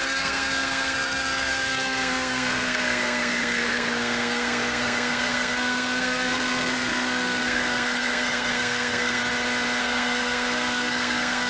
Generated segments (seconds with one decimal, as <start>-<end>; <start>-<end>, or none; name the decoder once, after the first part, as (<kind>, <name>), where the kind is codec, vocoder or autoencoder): 0.0-9.2 (codec, SNAC); 9.8-11.5